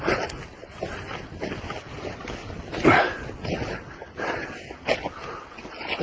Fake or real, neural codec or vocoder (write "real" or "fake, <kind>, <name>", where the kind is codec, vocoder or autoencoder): real